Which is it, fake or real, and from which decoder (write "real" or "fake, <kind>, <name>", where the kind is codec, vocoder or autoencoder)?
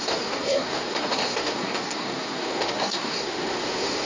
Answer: fake, codec, SNAC